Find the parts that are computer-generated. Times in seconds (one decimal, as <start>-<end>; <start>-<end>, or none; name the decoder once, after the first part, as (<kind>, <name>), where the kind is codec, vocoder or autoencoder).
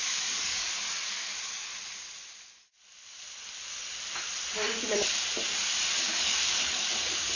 0.0-1.7 (codec, DAC); 6.0-7.4